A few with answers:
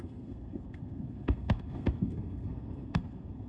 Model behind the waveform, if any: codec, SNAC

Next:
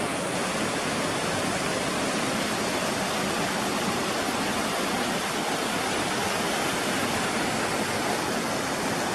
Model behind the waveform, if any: none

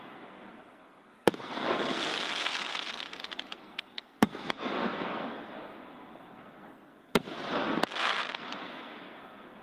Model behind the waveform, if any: codec, SNAC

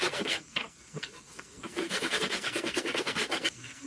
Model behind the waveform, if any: codec, SNAC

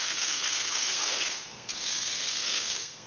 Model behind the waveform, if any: codec, SNAC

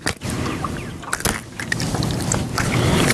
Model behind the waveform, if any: none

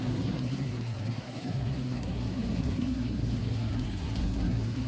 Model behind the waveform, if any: codec, SNAC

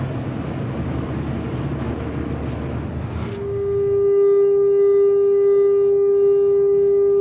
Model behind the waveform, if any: none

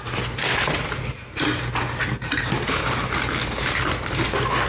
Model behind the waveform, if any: none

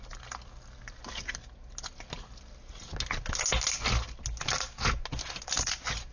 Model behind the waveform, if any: none